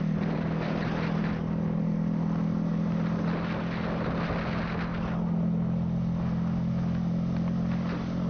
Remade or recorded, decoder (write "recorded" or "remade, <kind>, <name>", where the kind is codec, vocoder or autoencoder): recorded